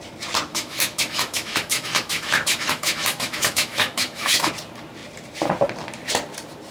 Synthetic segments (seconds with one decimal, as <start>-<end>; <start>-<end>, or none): 0.5-4.5

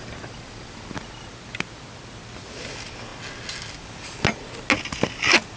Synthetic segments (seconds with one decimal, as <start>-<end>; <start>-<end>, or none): none

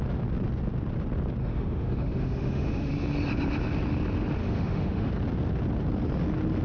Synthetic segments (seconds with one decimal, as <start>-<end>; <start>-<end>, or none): 1.4-2.9; 4.4-5.1

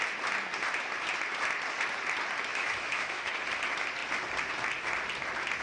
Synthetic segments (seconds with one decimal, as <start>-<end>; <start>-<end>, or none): 2.5-3.3

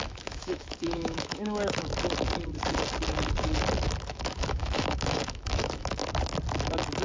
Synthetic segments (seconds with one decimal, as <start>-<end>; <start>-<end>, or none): 0.0-1.9; 4.1-6.0

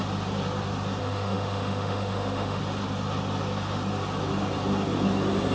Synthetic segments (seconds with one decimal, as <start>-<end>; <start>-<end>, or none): 1.0-2.6